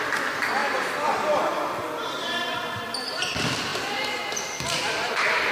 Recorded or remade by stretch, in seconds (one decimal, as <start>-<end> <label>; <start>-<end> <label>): 0.0-0.6 recorded; 0.6-3.2 remade; 3.2-3.7 recorded; 3.7-5.1 remade; 5.1-5.5 recorded